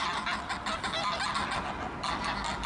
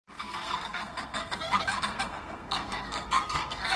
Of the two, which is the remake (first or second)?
second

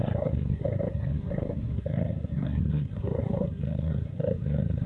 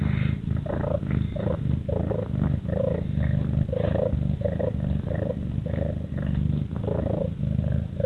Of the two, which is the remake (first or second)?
first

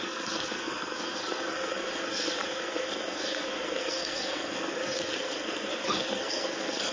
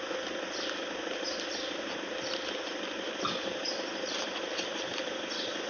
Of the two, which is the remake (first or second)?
first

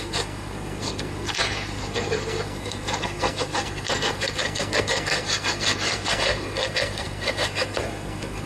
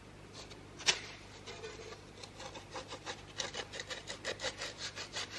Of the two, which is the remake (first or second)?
first